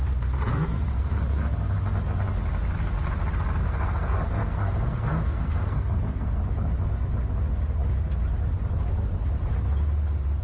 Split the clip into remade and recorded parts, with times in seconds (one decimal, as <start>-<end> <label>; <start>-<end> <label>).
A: 0.0-0.5 recorded; 0.5-1.1 remade; 1.1-3.6 recorded; 3.6-6.4 remade; 6.4-10.4 recorded